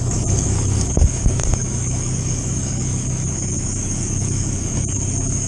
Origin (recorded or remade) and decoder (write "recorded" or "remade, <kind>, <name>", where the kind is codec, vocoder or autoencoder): remade, codec, DAC